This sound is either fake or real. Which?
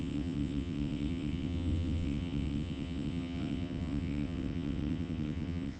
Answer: fake